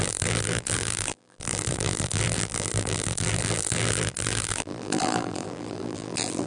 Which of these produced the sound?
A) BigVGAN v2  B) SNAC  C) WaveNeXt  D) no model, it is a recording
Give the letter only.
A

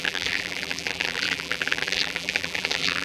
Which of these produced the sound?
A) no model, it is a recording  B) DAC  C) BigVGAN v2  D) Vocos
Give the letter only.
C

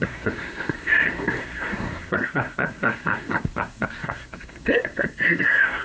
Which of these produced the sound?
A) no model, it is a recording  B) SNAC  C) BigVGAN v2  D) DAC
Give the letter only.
B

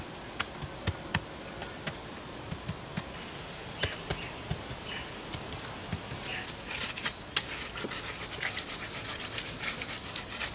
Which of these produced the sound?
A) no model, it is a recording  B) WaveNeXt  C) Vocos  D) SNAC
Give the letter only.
A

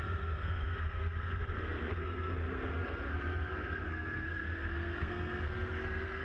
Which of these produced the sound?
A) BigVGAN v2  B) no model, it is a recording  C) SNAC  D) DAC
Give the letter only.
C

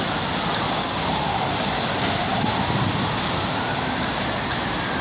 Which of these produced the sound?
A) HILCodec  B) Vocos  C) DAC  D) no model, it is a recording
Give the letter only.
D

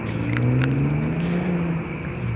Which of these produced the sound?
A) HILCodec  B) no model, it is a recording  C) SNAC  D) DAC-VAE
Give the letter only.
B